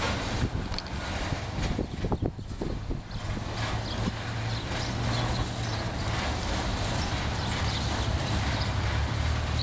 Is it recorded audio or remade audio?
recorded